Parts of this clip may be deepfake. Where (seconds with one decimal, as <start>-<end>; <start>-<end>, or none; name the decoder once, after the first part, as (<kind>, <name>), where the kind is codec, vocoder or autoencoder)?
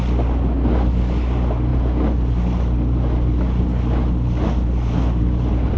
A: none